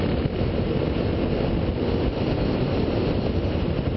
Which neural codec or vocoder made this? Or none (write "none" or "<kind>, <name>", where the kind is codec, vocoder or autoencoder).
none